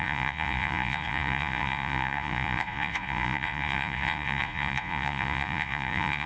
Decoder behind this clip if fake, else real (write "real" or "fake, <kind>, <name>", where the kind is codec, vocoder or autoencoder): fake, vocoder, Vocos